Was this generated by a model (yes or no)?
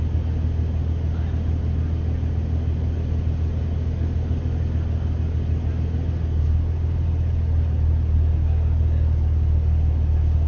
no